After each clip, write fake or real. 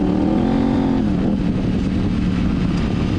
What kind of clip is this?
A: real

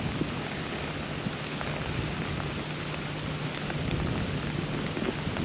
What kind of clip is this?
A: real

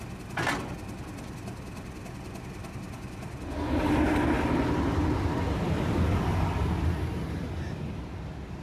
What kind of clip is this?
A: real